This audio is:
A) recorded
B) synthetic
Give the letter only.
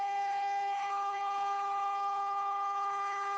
B